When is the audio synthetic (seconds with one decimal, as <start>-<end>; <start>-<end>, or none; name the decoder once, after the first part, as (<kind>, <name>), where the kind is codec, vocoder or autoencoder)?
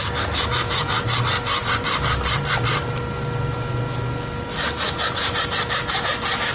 none